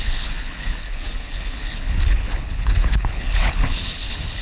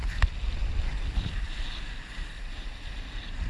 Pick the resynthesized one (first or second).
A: first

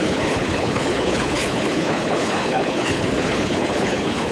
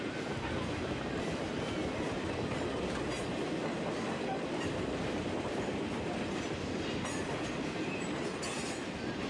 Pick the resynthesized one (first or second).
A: first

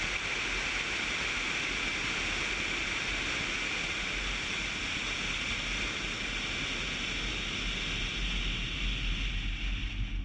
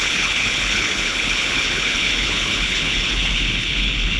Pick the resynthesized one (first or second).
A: second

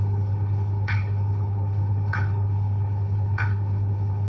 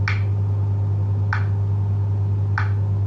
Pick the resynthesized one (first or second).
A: first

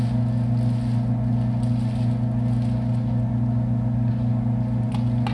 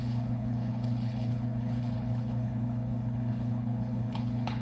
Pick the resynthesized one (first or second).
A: second